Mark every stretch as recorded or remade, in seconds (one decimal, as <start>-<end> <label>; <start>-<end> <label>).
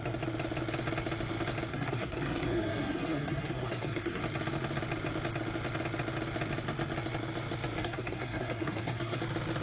0.0-1.7 recorded; 1.7-4.2 remade; 4.2-7.8 recorded; 7.8-9.2 remade; 9.2-9.6 recorded